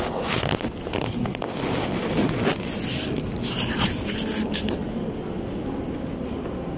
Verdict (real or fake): real